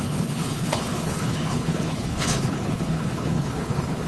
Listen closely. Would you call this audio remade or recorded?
remade